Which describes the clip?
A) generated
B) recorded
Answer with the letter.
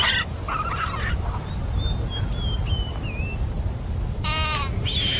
B